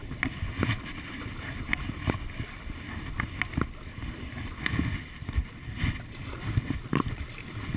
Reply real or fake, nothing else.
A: real